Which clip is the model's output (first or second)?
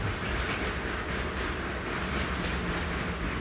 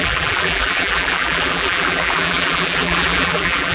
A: second